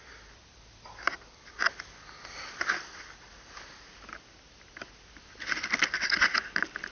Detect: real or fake real